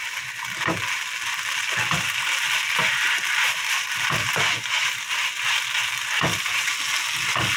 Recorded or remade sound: recorded